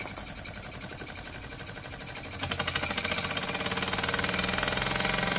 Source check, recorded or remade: recorded